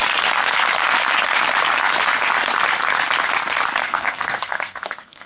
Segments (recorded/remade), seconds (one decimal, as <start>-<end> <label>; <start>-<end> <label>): 0.0-3.8 recorded; 3.8-5.3 remade